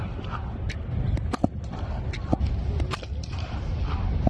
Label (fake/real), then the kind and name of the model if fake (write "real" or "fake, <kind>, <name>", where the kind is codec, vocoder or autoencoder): real